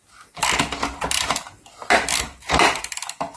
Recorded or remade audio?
recorded